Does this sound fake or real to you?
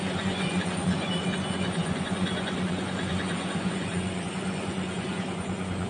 fake